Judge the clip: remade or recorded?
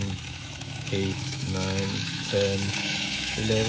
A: remade